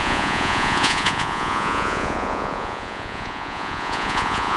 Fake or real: fake